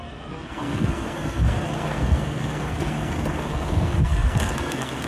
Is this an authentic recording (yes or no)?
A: no